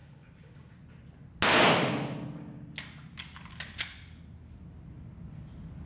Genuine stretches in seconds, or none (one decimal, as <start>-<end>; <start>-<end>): 0.0-5.9